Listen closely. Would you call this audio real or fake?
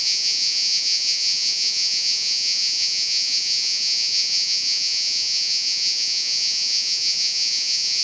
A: fake